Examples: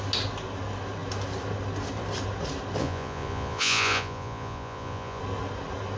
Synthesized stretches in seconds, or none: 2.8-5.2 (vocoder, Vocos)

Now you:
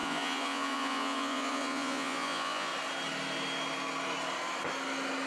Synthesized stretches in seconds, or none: 0.0-2.7 (vocoder, Vocos)

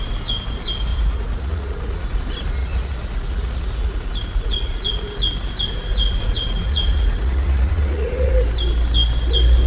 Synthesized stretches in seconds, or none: 0.9-2.2 (vocoder, Vocos); 2.6-4.8; 5.9-8.3